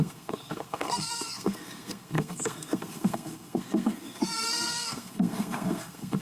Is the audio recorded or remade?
remade